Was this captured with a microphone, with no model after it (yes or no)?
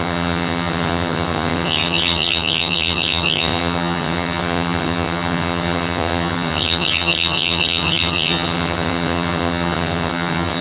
no